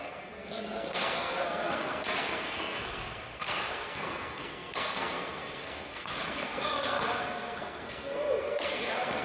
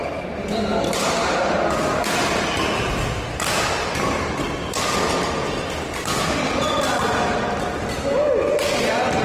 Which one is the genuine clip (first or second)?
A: second